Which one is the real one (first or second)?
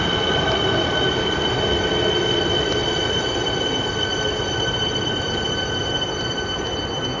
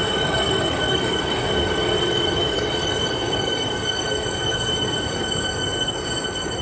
first